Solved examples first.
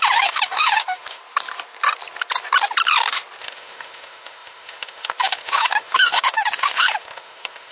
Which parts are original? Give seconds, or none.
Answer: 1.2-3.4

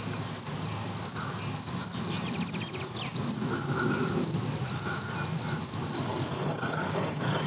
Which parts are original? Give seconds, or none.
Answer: 0.0-6.3

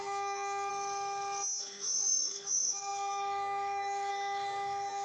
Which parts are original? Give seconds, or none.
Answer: 0.7-1.6

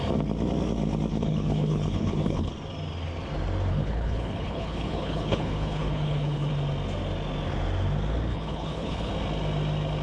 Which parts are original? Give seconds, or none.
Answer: 0.0-1.1; 2.5-3.7; 6.5-8.3; 9.1-10.0

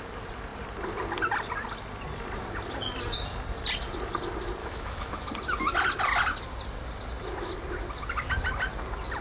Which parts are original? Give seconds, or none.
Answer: 0.0-4.6; 5.3-9.2

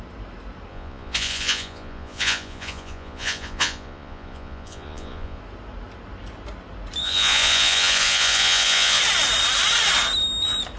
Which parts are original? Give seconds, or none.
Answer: 0.0-0.7; 5.4-7.0; 9.0-10.8

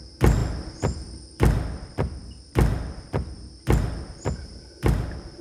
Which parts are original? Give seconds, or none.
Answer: 0.0-4.5